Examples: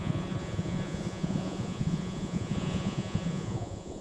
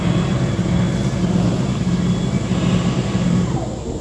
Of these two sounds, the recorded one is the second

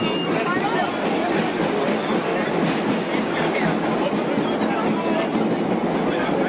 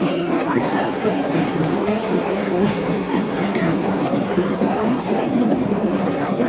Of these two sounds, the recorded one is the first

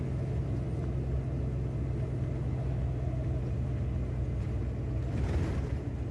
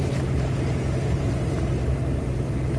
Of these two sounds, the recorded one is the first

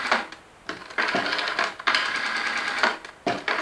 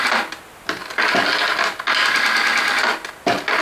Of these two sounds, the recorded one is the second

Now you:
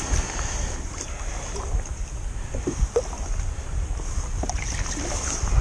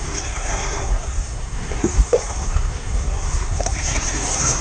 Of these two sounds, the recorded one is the first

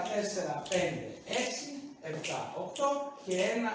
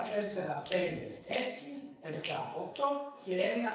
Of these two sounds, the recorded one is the first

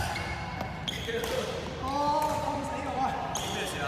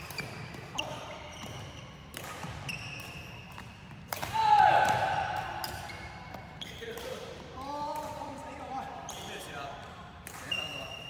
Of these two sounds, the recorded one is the first